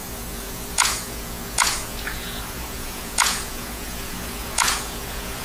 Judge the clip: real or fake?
fake